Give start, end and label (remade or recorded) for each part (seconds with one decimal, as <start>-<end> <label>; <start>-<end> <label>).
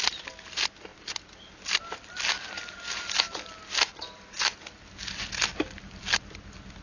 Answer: 0.0-6.8 recorded